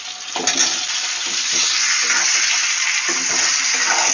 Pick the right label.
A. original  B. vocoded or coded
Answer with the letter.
A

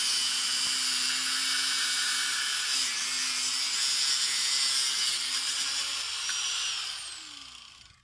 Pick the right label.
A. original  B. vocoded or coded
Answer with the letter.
A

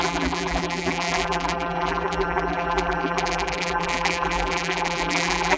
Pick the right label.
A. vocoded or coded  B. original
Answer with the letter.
A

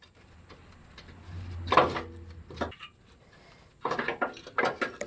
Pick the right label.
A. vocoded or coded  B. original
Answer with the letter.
B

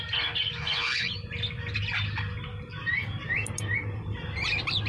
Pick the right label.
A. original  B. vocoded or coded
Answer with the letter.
A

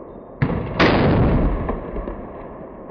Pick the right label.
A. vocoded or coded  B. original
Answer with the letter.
B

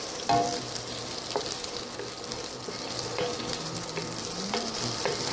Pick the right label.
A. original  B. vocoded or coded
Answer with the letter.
B